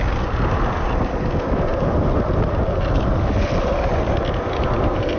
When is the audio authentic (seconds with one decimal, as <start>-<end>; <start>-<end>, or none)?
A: 0.0-5.2